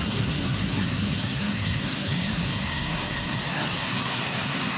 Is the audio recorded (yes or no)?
no